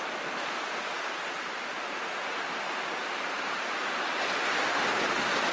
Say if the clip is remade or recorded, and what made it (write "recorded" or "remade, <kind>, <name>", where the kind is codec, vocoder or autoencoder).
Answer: remade, vocoder, BigVGAN v2